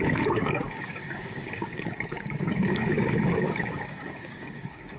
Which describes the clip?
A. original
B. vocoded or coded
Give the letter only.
B